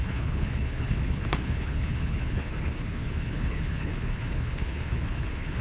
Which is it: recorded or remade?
remade